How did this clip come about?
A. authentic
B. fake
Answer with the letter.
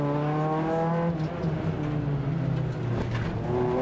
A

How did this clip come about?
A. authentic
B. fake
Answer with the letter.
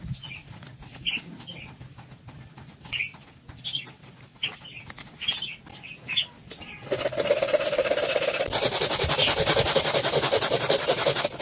A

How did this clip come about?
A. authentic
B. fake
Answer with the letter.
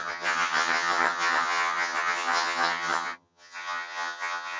B